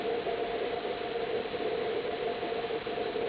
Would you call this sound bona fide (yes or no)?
yes